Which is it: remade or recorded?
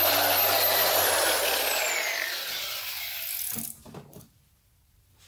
recorded